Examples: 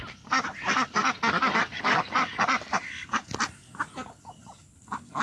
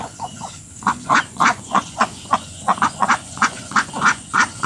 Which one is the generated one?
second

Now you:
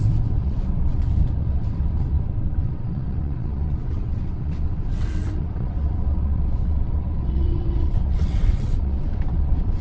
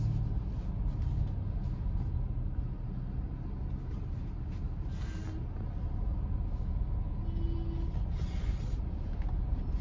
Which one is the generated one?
first